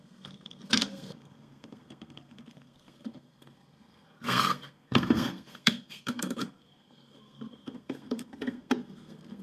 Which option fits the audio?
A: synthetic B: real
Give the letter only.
A